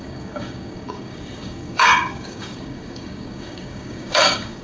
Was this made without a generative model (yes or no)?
no